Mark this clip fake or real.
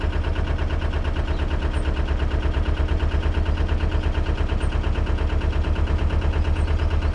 real